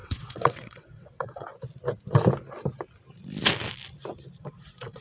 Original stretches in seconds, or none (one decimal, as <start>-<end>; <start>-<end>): 1.5-4.4